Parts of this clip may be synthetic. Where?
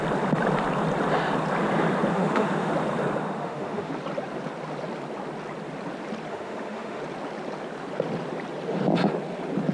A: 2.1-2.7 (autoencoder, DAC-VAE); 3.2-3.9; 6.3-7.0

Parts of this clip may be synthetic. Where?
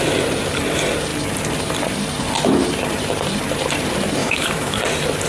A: 4.2-4.8 (autoencoder, DAC-VAE)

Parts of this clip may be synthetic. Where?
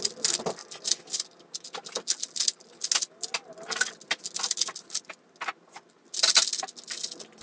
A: none